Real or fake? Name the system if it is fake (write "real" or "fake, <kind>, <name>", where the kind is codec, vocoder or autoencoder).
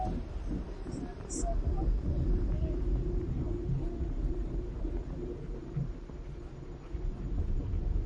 fake, vocoder, BigVGAN v2